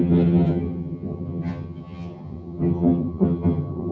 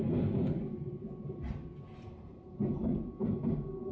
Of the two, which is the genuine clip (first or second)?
second